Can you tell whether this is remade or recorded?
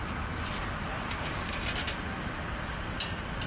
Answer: recorded